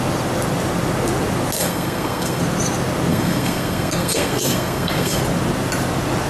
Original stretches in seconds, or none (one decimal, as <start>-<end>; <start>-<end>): 0.0-1.6; 2.4-3.1; 5.2-6.3